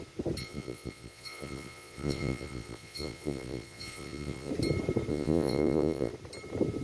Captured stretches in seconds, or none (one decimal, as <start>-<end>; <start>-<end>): 0.0-0.4; 4.5-5.1; 6.1-6.8